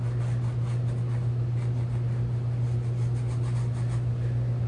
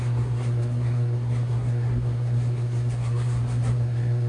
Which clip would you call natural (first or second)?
first